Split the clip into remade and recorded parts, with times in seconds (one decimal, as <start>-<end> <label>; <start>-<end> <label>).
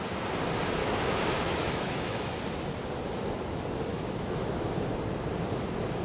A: 0.0-0.8 recorded; 0.8-2.4 remade; 2.4-3.9 recorded; 3.9-4.5 remade; 4.5-6.0 recorded